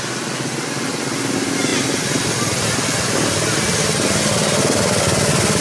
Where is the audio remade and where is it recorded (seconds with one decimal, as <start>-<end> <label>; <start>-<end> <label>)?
0.0-5.6 recorded